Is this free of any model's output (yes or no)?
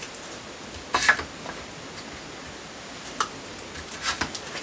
yes